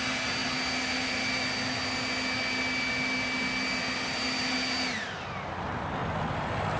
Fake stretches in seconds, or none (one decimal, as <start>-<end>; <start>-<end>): none